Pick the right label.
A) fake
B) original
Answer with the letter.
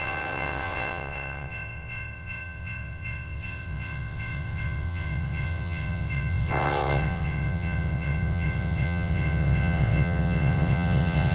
A